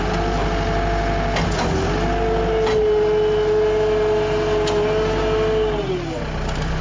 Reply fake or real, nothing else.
real